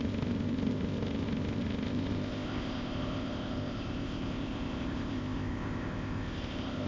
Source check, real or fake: fake